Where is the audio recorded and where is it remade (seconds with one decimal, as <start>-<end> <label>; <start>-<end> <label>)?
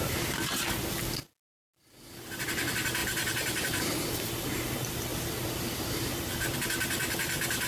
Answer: 0.0-3.0 recorded; 3.0-3.9 remade; 3.9-7.7 recorded